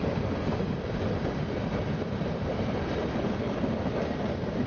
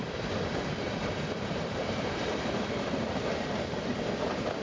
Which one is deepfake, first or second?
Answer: second